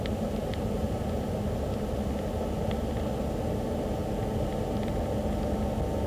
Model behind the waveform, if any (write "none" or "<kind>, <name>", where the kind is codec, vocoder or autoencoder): none